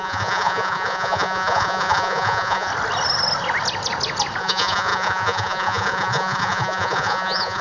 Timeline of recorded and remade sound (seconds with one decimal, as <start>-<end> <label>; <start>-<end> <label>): 0.0-2.7 remade; 2.7-4.4 recorded; 4.4-7.6 remade